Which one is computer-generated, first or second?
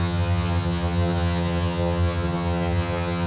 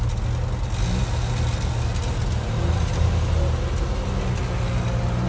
first